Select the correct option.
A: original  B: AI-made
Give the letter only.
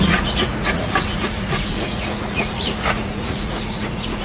B